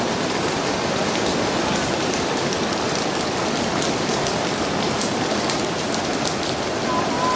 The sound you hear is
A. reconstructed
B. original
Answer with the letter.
A